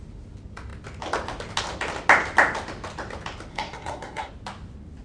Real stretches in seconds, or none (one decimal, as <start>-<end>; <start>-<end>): 0.0-3.5; 4.3-5.0